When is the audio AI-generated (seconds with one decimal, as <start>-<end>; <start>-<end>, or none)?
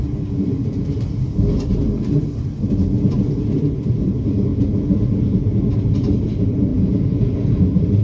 4.5-5.6; 6.7-7.6